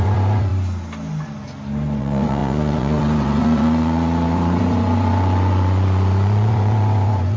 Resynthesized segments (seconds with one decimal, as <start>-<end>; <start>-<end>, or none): 0.0-0.5; 2.0-7.4